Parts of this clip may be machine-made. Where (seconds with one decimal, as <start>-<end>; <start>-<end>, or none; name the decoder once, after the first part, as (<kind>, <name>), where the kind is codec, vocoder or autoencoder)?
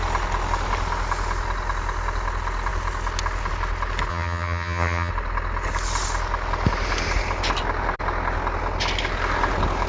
4.1-5.1 (vocoder, HiFi-GAN)